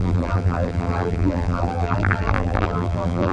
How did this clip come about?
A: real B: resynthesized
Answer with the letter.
B